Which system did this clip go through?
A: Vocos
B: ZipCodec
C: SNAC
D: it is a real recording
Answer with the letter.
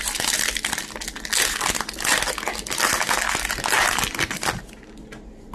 D